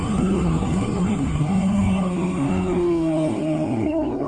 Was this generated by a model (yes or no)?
yes